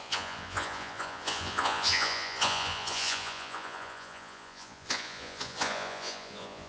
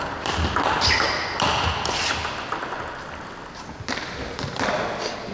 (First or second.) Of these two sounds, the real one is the second